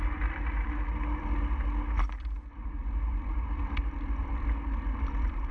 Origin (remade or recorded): recorded